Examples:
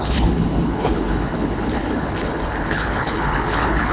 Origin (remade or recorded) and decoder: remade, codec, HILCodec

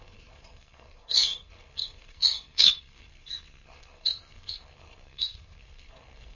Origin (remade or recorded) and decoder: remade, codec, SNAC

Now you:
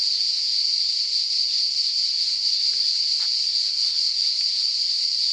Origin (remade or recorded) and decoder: recorded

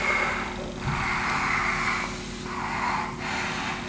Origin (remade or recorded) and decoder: recorded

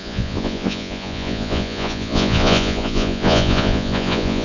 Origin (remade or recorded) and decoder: remade, vocoder, Vocos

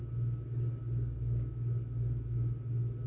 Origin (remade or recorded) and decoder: recorded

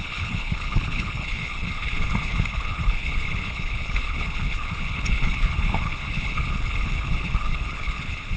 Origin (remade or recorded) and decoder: remade, codec, HILCodec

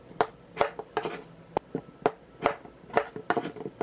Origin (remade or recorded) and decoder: recorded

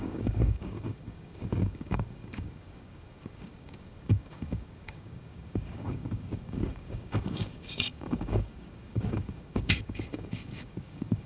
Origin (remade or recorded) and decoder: remade, codec, DAC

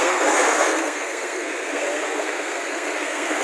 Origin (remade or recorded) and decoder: remade, codec, SNAC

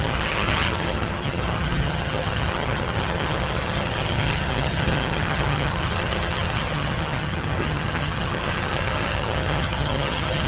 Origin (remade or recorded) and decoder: remade, vocoder, HiFi-GAN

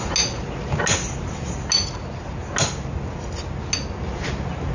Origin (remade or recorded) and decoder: recorded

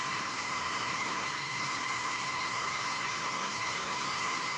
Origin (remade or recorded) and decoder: remade, codec, SNAC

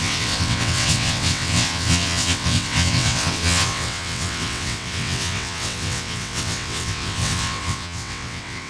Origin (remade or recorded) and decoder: remade, vocoder, WaveNeXt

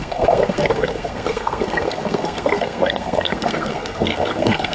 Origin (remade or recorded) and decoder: remade, codec, SNAC